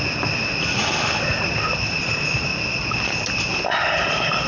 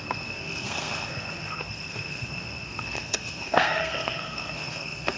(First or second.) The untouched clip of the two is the first